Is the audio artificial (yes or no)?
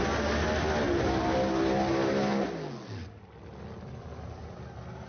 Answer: no